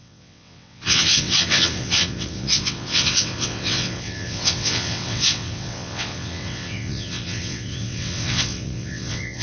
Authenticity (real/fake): fake